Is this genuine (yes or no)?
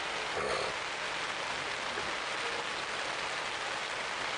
yes